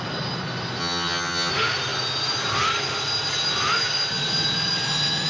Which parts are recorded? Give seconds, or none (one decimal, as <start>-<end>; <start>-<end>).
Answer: 0.0-0.8; 1.5-5.3